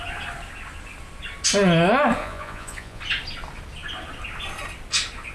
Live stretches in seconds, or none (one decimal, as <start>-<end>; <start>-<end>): 0.0-2.2; 3.0-5.3